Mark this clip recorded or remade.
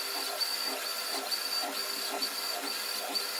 recorded